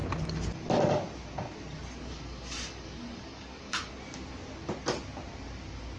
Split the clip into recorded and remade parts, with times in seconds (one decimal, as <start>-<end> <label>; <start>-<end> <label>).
0.0-2.0 recorded; 2.0-3.9 remade; 3.9-6.0 recorded